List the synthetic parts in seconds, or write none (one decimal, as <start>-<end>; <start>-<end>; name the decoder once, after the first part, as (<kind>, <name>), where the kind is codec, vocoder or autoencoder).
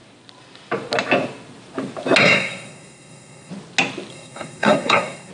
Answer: 2.2-3.5 (codec, SNAC); 4.1-5.3